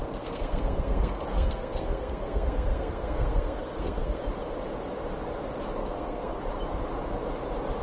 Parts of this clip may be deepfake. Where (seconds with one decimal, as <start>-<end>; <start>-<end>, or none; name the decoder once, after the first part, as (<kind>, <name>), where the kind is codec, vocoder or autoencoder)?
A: 0.0-4.2 (codec, SNAC); 5.8-6.4